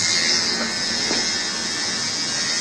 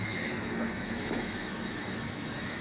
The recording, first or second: first